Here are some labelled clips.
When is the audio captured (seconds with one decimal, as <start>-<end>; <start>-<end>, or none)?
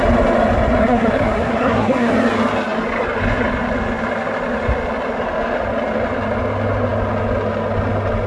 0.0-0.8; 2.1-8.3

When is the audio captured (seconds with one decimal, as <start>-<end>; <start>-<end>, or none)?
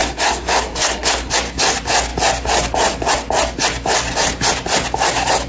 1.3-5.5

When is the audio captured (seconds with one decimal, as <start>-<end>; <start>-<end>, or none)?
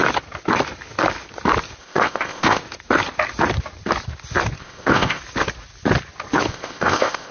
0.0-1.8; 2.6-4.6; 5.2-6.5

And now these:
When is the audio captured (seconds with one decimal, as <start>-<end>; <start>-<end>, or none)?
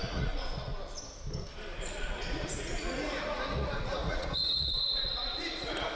0.7-1.8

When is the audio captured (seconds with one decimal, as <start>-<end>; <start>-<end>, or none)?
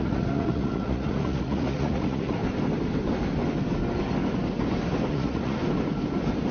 2.4-5.1; 5.6-6.5